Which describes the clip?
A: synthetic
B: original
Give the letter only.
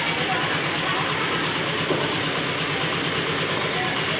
B